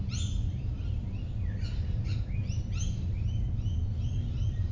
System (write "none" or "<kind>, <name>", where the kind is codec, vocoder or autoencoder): none